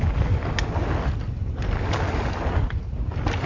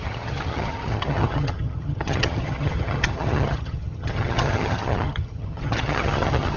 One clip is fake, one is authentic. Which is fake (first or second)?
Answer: second